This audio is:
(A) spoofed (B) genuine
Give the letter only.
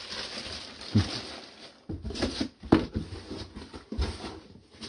B